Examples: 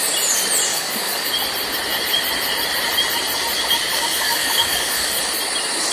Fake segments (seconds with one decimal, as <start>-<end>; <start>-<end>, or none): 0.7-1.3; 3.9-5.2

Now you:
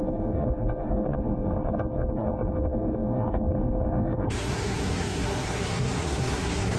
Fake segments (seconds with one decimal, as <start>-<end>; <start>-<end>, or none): 0.0-6.8

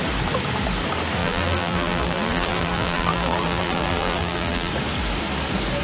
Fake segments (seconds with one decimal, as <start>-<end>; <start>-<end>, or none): 1.2-4.7

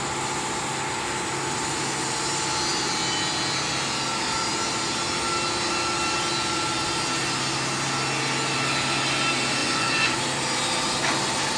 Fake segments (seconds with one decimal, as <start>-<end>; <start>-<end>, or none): 9.6-10.2